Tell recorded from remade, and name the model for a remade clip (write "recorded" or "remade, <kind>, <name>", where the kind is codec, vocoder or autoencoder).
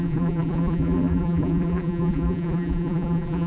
remade, vocoder, BigVGAN v2